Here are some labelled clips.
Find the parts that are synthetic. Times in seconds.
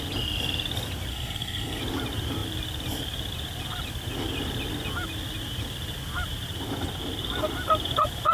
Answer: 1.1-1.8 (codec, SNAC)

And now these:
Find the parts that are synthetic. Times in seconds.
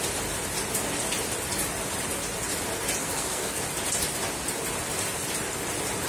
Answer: 3.0-3.6 (codec, SNAC)